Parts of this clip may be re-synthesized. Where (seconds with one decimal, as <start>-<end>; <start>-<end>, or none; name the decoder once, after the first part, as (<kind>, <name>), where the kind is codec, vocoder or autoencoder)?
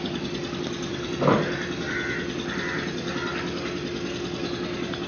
none